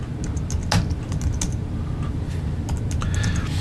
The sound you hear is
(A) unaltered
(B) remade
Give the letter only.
A